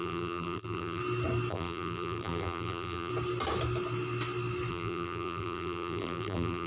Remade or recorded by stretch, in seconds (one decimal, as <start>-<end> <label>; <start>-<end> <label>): 0.0-1.0 remade; 1.0-1.5 recorded; 1.5-3.1 remade; 3.1-4.7 recorded; 4.7-6.7 remade